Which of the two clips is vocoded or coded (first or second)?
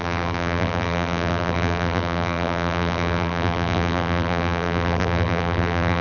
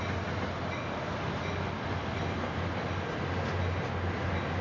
first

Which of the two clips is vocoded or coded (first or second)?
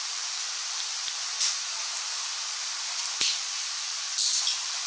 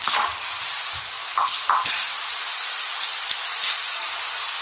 first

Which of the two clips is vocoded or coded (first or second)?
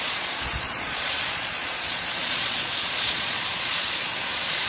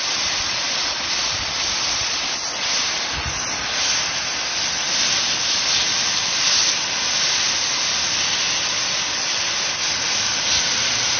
first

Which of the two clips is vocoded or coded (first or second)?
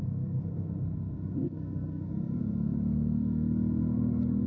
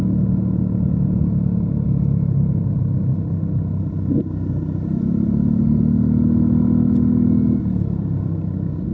first